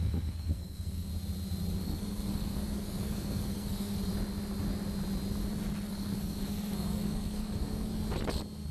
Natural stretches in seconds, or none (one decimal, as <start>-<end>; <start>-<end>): 1.1-1.8; 4.1-5.9; 8.0-8.7

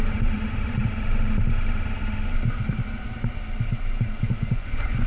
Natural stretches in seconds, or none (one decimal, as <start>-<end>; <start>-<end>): 0.0-4.3

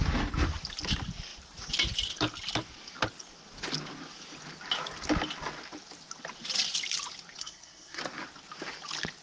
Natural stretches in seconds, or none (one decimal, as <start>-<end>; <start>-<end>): 0.0-7.4; 8.0-9.2

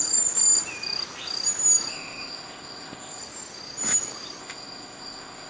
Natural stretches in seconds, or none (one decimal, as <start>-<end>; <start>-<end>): 0.0-1.9; 3.2-4.4

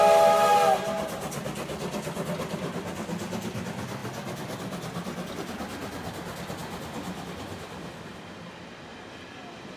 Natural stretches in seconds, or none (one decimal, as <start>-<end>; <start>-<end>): 0.0-9.8